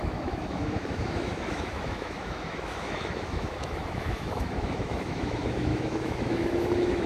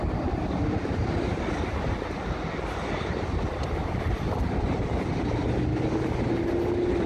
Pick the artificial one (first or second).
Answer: first